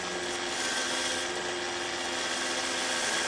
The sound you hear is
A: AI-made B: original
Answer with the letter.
B